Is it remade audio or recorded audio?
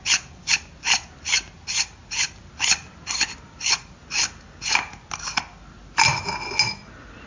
recorded